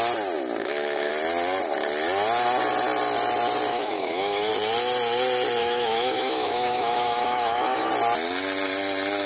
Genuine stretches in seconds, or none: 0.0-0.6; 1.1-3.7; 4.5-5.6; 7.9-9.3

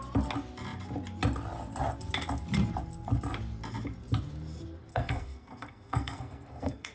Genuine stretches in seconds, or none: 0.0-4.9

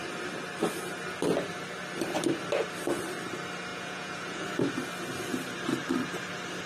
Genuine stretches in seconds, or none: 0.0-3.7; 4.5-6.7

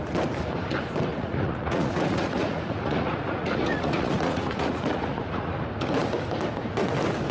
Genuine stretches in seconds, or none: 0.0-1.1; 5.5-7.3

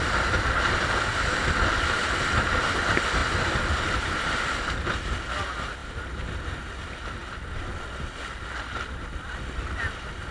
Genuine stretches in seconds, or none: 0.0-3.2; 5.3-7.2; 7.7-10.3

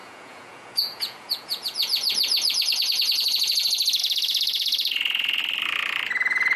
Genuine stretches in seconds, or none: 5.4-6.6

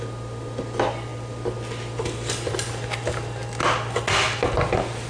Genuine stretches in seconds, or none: 0.0-5.1

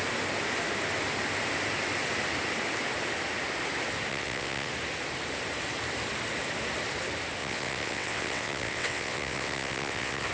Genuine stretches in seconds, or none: 0.0-4.1; 4.7-7.4